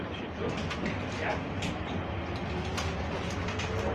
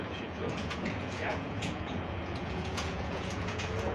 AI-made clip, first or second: second